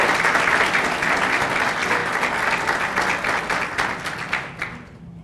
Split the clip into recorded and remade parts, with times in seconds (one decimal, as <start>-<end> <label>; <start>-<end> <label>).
0.0-5.2 recorded